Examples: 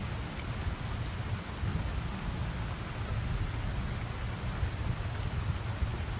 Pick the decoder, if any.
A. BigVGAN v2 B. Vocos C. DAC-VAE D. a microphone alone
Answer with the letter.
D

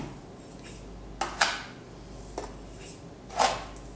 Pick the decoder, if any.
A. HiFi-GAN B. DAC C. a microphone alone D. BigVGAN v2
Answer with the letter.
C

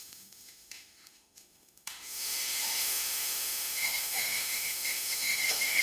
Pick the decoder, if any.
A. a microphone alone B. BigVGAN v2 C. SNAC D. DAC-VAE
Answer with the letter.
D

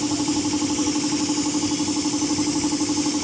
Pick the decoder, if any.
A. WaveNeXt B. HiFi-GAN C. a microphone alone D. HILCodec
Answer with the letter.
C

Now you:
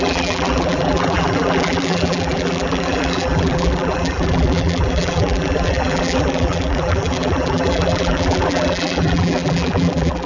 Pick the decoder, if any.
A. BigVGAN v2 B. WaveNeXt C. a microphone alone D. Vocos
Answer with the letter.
A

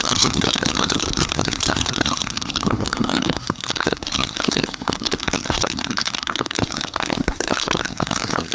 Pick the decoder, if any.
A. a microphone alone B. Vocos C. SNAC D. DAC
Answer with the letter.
C